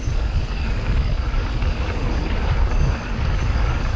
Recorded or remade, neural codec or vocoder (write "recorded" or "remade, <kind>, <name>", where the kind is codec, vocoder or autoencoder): remade, codec, DAC